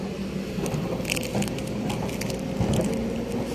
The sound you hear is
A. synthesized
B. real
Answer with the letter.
B